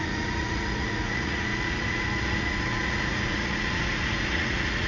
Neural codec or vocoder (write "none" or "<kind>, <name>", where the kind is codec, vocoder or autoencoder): vocoder, Vocos